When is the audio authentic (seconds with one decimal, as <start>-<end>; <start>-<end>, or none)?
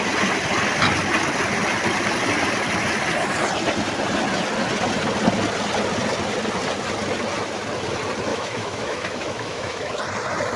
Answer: 0.0-8.3; 10.0-10.6